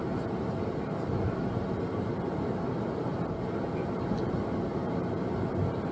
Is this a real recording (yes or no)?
yes